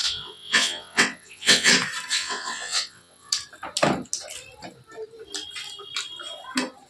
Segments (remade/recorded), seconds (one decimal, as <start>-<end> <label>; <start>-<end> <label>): 0.0-1.7 remade; 1.7-2.1 recorded; 2.1-3.3 remade; 3.3-6.9 recorded